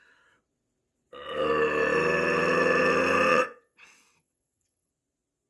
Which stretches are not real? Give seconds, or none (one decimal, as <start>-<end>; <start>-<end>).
3.3-4.9